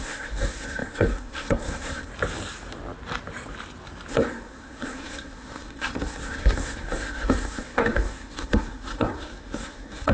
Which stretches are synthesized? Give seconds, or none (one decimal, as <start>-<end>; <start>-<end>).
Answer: 0.0-2.1; 4.1-10.1